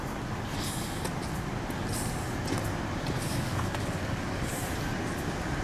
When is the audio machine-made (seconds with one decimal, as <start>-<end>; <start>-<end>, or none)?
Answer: 3.3-4.7